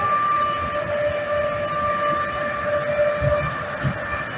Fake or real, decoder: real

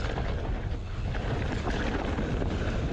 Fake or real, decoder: real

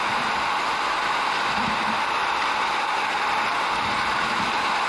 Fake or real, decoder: real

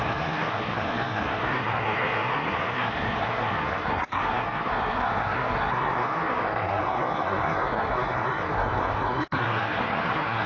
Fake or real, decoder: fake, codec, SNAC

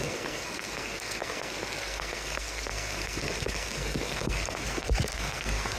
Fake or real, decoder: fake, codec, SNAC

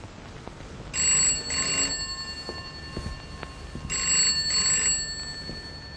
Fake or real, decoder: real